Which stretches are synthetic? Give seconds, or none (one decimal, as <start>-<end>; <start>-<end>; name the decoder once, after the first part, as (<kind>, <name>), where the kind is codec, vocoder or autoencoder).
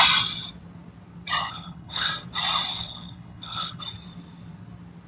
1.4-2.1 (codec, HILCodec); 2.7-3.8